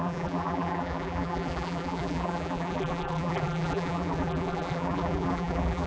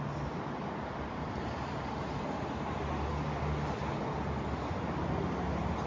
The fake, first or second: first